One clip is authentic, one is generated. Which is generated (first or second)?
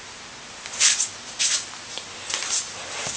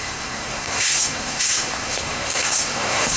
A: second